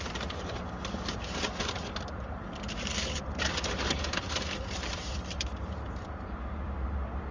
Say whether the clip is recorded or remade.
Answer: remade